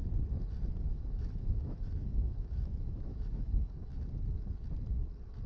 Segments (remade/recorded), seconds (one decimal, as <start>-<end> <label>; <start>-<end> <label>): 0.0-0.9 recorded; 0.9-4.0 remade; 4.0-5.5 recorded

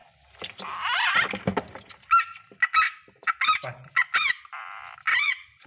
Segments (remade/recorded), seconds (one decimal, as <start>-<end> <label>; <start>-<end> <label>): 0.0-5.1 recorded; 5.1-5.7 remade

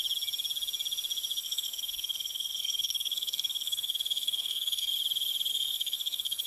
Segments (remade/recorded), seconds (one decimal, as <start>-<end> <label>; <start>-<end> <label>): 0.0-1.4 recorded; 1.4-4.9 remade; 4.9-5.5 recorded; 5.5-6.5 remade